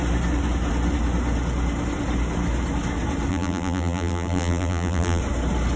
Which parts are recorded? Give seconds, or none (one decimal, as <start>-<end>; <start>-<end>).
0.0-3.3; 5.2-5.8